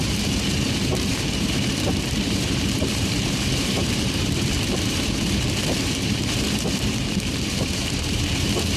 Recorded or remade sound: remade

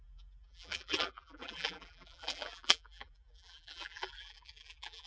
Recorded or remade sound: remade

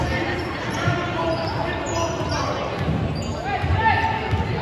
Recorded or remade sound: recorded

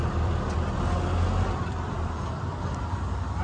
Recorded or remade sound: remade